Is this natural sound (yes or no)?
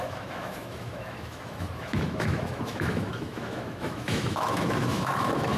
no